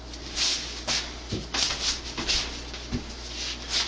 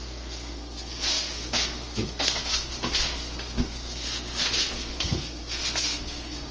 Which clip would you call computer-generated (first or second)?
second